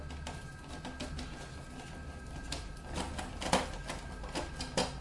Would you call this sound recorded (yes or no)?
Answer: yes